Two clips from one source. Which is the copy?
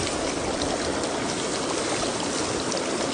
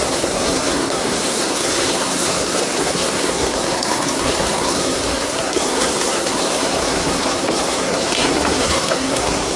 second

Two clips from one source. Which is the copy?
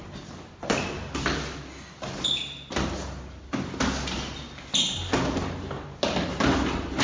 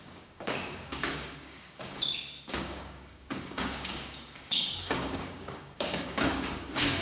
second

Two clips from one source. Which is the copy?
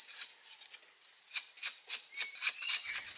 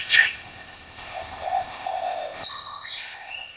second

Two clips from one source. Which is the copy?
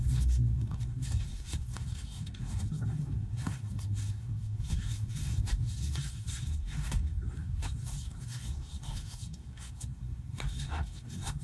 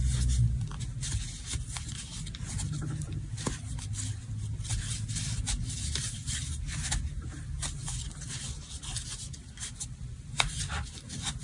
first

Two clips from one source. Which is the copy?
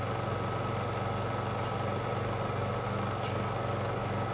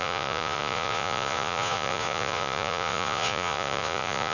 second